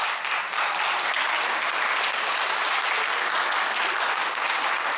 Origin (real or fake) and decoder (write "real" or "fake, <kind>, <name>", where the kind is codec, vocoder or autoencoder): real